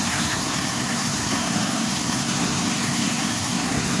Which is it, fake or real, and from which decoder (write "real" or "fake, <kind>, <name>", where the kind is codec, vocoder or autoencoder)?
fake, codec, SNAC